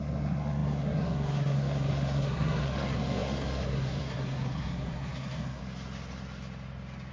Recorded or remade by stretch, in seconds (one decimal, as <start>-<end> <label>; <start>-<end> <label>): 0.0-5.6 remade; 5.6-7.1 recorded